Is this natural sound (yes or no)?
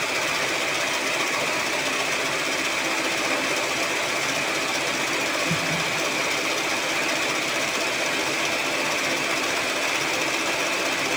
yes